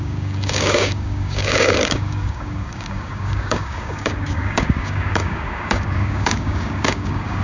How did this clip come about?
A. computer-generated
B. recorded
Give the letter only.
A